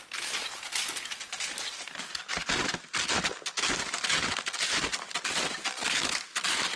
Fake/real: real